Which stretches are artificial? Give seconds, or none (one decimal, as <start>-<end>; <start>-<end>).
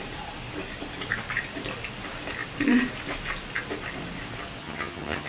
4.6-5.3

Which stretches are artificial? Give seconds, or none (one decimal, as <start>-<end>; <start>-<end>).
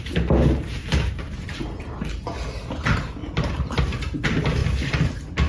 0.8-1.8; 3.2-3.8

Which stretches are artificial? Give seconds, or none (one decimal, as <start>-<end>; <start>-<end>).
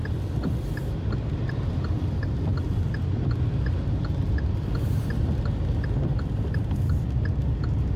none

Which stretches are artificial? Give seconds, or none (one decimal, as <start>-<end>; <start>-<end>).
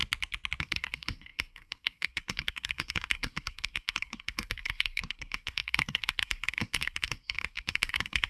0.6-8.3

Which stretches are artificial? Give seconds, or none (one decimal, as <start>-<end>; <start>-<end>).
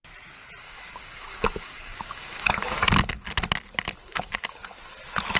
0.6-3.3; 4.0-4.8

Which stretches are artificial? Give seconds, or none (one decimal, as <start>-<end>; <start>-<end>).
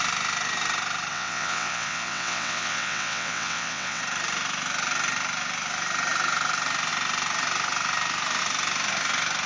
1.1-4.0